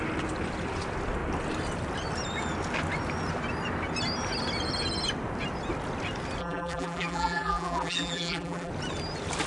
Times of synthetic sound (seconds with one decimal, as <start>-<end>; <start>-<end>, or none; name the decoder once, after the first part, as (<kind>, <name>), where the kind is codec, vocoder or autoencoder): 6.4-8.7 (vocoder, BigVGAN v2)